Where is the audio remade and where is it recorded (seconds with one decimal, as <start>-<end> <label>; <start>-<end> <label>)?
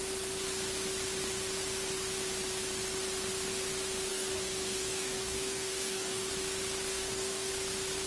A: 0.0-4.1 recorded; 4.1-6.3 remade; 6.3-6.9 recorded; 6.9-7.5 remade; 7.5-8.1 recorded